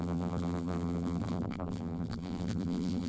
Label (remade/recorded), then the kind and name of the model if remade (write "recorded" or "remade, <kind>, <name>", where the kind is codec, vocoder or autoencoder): remade, vocoder, BigVGAN v2